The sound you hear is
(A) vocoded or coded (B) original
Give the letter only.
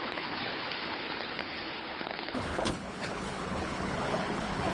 A